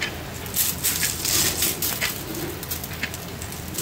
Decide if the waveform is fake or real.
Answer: real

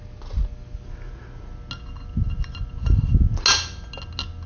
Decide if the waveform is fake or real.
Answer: real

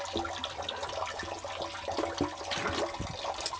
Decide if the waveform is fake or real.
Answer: real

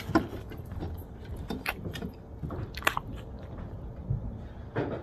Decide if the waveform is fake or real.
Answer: real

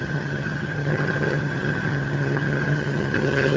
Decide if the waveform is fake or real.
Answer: fake